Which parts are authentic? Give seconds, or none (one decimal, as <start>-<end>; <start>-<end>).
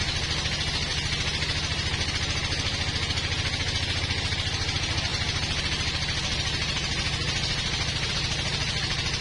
0.0-9.2